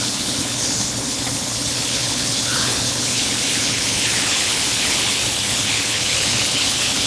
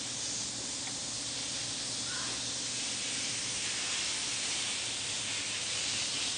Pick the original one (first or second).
second